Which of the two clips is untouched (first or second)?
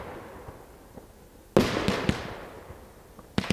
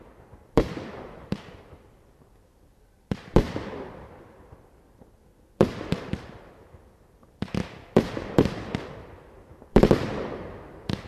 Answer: first